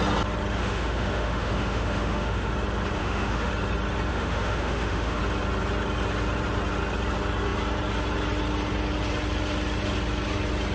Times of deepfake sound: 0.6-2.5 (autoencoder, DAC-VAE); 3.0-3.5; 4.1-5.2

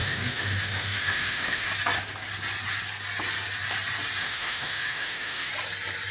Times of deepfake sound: 0.0-1.7 (autoencoder, DAC-VAE); 4.2-5.5

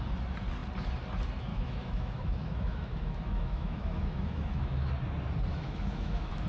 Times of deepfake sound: 1.5-4.9 (autoencoder, DAC-VAE); 5.5-6.5

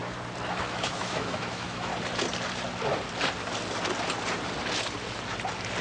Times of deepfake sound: 0.5-1.9 (autoencoder, DAC-VAE)

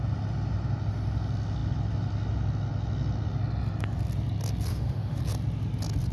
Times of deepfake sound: 4.7-5.2 (autoencoder, DAC-VAE)

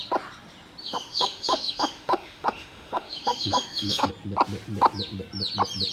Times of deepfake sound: 0.8-4.1 (autoencoder, DAC-VAE)

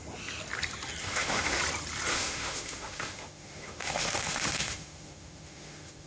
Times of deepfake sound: 1.0-1.6 (autoencoder, DAC-VAE); 2.1-6.1

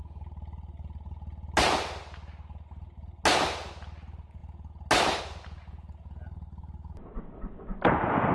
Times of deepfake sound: none